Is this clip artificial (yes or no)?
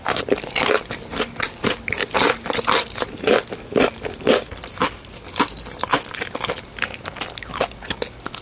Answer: no